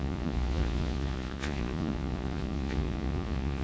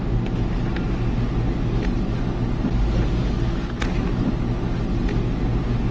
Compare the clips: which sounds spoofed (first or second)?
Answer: first